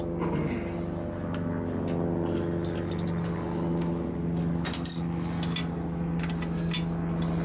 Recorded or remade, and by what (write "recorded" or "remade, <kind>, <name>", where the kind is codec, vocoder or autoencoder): recorded